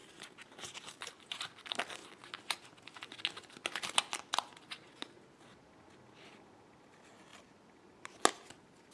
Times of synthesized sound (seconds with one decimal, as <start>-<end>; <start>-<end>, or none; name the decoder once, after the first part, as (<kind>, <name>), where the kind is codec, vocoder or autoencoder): 0.0-1.1 (vocoder, BigVGAN v2)